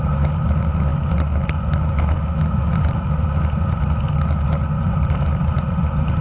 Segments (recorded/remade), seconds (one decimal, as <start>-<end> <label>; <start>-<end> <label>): 0.0-6.2 recorded